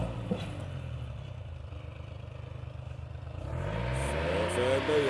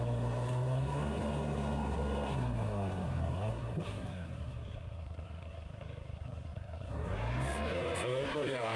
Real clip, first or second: first